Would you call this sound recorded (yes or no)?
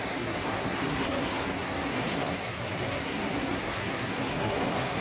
no